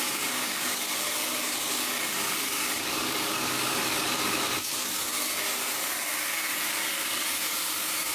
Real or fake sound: fake